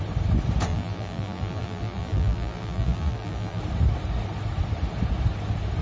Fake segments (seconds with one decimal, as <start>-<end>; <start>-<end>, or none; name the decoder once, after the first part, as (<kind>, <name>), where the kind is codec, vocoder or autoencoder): 0.7-3.6 (vocoder, BigVGAN v2)